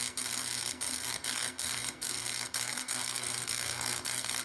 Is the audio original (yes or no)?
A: no